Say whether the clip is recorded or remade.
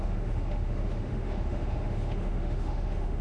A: remade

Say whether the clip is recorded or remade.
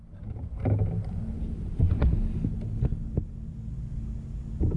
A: recorded